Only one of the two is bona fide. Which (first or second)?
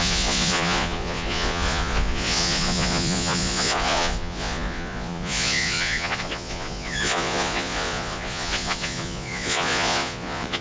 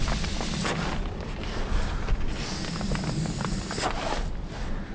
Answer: second